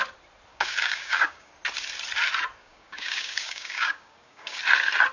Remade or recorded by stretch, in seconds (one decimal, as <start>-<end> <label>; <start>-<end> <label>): 0.0-0.5 recorded; 0.5-1.5 remade; 1.5-2.6 recorded; 2.6-4.6 remade; 4.6-5.1 recorded